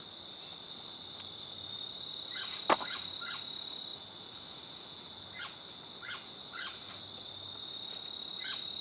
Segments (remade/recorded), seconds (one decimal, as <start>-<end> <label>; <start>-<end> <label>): 0.0-0.5 recorded; 0.5-2.1 remade; 2.1-8.8 recorded